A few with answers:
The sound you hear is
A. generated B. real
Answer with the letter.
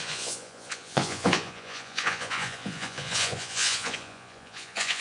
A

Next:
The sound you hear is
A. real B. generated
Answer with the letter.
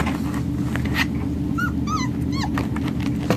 A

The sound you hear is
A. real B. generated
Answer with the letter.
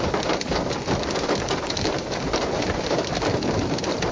A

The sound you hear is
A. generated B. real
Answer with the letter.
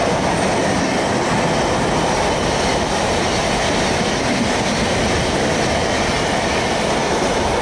B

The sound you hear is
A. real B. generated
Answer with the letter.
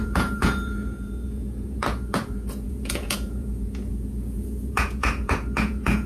B